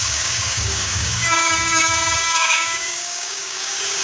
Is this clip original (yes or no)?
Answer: no